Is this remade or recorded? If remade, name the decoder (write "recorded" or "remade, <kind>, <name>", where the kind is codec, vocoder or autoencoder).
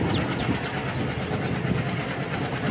recorded